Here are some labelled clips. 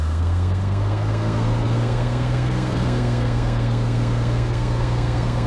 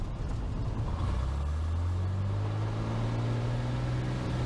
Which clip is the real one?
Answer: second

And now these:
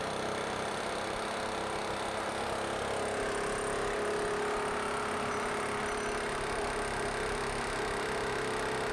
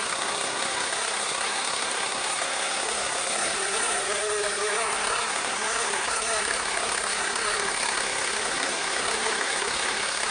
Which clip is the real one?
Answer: first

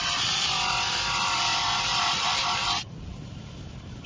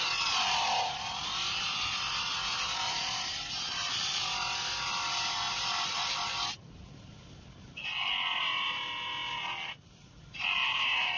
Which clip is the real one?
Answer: second